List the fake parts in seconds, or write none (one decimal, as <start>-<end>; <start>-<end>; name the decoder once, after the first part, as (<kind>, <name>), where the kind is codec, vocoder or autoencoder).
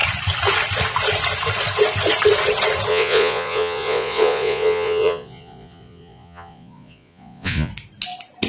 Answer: 2.9-7.7 (vocoder, Vocos)